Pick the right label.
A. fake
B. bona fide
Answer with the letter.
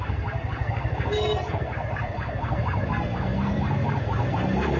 A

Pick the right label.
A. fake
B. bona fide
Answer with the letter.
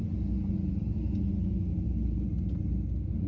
B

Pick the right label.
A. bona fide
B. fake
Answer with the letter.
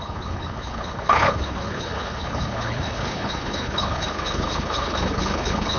B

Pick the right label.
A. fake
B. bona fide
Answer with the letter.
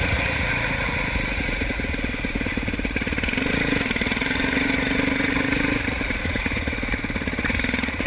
A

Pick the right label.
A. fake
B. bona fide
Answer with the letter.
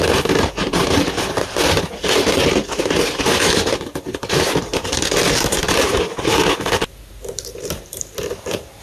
A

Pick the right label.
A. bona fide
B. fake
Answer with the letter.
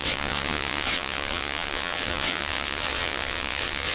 B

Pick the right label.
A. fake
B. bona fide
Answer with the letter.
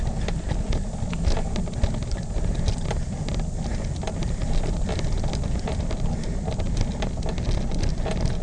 B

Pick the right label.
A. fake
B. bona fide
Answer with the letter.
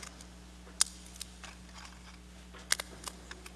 B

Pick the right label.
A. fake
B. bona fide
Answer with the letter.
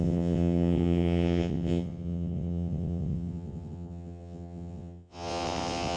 A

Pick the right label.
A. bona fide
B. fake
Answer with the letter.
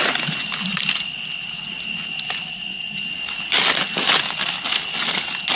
A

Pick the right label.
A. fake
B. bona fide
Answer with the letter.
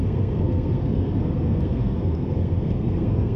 A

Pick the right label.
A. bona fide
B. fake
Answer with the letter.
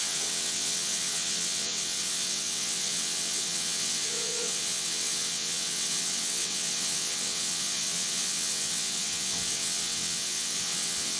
B